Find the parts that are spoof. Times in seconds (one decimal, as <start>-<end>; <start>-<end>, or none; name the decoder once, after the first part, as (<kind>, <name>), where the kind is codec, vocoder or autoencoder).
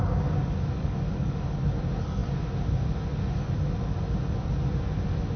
0.4-1.6 (codec, DAC)